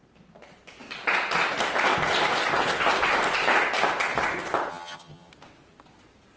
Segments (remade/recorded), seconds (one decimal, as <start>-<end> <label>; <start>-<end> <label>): 0.0-4.7 recorded; 4.7-5.3 remade; 5.3-6.4 recorded